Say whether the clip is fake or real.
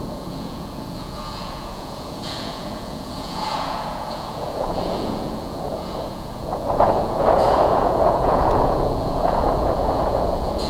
fake